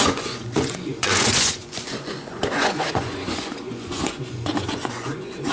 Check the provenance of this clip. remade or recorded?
remade